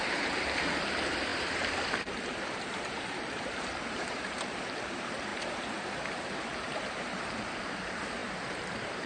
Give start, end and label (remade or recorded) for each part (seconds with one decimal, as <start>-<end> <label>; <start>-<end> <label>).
0.0-9.1 remade